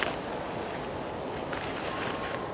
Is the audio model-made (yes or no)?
no